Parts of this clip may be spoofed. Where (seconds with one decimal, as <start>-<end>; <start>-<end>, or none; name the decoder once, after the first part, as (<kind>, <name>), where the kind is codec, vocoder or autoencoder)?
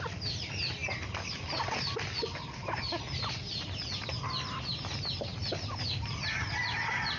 none